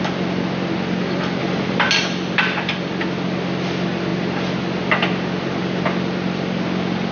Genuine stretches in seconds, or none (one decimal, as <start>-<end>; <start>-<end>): 0.0-1.4; 1.9-7.1